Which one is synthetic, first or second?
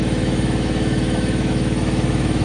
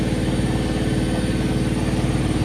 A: first